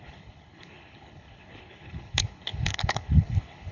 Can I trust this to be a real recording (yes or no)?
no